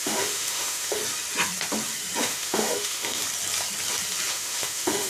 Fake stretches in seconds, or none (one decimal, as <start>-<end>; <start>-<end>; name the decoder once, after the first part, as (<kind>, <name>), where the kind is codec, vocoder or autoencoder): 0.0-1.0 (autoencoder, DAC-VAE); 2.2-3.2; 4.3-5.1